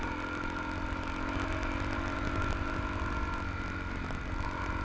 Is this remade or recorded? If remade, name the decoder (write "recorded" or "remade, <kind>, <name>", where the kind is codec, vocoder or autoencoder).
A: recorded